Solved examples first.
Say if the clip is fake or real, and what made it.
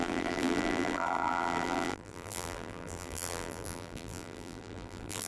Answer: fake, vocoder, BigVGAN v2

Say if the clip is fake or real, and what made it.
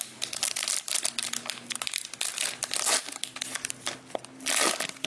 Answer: real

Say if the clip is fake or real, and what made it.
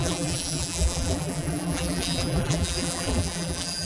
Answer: fake, vocoder, BigVGAN v2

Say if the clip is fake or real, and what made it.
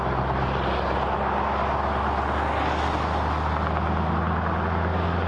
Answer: real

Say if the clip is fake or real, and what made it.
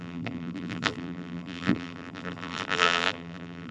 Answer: fake, vocoder, BigVGAN v2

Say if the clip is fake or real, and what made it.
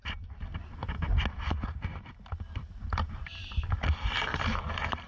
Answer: real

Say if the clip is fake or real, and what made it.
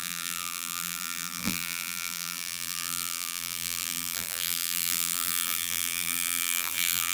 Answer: fake, vocoder, BigVGAN v2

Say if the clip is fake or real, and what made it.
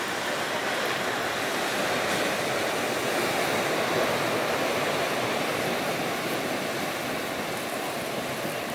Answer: real